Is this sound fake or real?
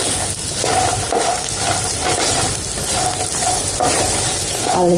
real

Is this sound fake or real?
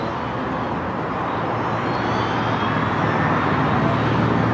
real